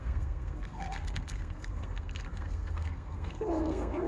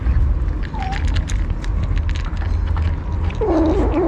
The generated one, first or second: first